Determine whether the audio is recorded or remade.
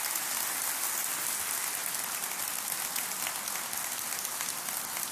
recorded